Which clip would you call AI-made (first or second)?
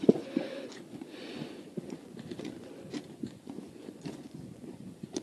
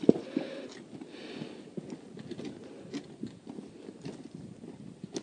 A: first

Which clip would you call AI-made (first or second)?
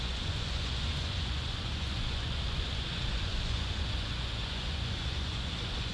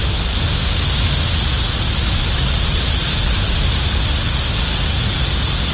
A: first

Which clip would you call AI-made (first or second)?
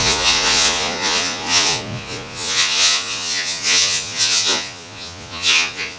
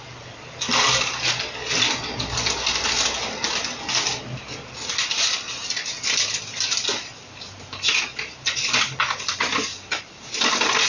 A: first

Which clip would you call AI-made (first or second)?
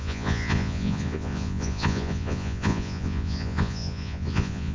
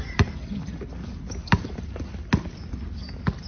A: first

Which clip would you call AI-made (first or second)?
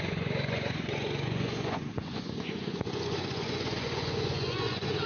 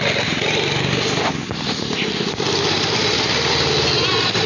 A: first